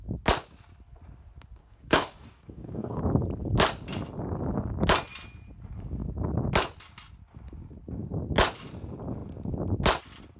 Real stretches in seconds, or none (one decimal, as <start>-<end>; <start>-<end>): 0.0-1.6; 3.0-10.4